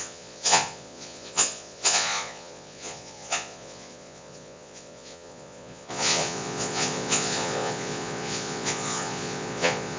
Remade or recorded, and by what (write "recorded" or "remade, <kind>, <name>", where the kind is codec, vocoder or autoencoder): remade, vocoder, Vocos